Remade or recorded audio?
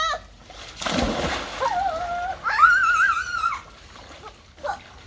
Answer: recorded